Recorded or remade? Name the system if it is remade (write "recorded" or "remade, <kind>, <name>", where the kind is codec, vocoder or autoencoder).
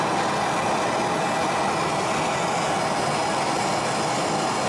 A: recorded